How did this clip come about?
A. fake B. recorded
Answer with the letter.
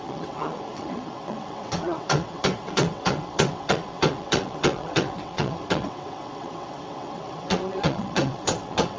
A